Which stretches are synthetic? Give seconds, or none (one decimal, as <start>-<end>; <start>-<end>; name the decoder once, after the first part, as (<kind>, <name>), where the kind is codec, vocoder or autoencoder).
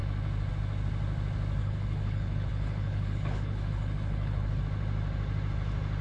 1.6-4.6 (codec, HILCodec)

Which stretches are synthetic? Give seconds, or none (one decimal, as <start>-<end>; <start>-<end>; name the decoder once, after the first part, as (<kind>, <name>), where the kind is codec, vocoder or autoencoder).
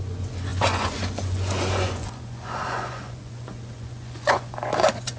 0.0-5.2 (vocoder, Vocos)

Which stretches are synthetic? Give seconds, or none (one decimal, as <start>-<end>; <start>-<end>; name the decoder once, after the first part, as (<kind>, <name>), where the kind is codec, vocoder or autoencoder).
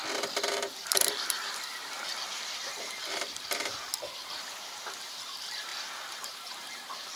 0.5-2.1 (vocoder, BigVGAN v2); 2.7-7.2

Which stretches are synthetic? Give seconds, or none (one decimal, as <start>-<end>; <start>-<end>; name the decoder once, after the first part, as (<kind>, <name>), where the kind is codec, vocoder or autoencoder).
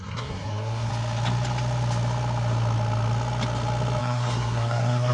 0.0-0.9 (codec, SNAC); 4.0-5.1